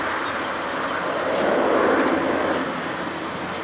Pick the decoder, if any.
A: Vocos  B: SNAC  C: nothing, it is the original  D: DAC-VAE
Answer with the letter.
C